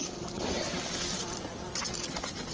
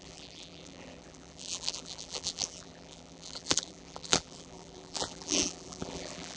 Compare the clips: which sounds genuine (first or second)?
first